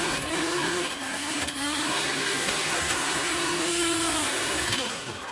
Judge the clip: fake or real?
fake